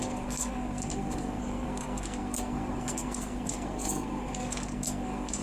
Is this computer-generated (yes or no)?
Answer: yes